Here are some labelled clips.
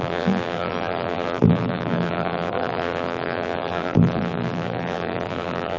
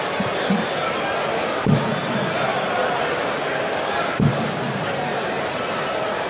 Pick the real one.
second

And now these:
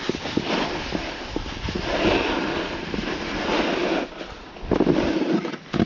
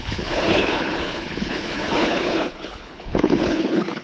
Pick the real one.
first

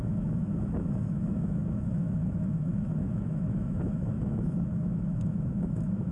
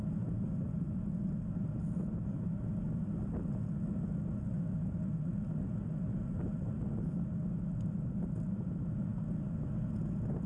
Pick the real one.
second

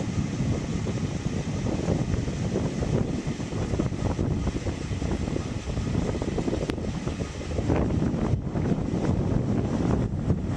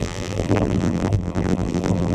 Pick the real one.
first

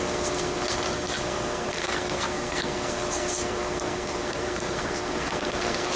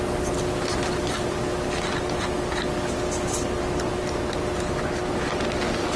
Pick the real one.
second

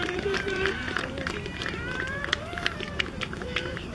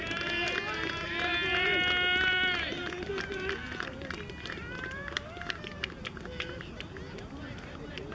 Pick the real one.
second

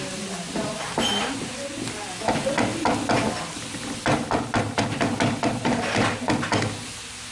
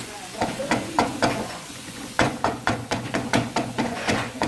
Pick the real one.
first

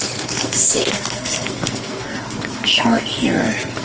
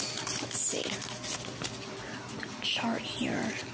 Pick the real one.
second